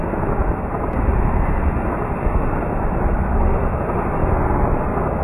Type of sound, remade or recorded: recorded